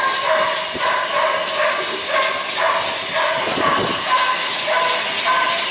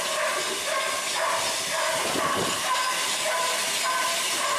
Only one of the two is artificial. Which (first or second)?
second